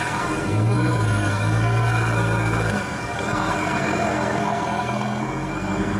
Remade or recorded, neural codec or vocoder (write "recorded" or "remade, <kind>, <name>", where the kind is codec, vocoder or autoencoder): remade, codec, SNAC